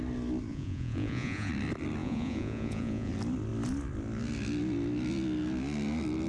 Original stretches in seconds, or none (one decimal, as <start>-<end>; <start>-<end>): 0.0-0.5; 1.5-2.0; 3.1-6.3